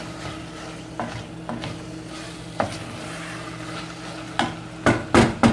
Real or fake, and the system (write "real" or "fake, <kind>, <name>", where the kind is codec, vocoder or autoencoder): real